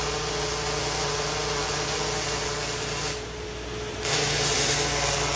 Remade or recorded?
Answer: recorded